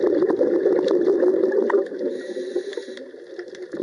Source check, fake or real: real